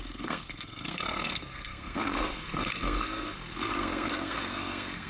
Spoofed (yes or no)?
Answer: yes